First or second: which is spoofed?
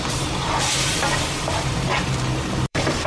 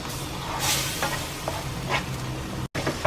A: first